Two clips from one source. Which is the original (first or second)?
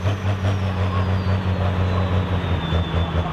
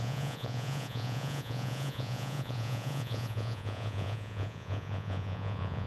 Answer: first